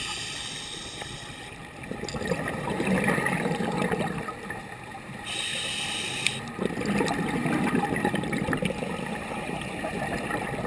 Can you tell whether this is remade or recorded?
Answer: recorded